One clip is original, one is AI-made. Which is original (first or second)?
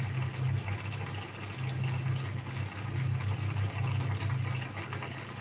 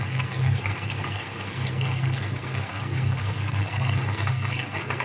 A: first